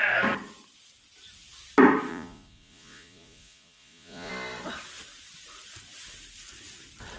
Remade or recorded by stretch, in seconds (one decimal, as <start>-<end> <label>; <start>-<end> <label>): 0.0-2.1 recorded; 2.1-4.3 remade; 4.3-7.2 recorded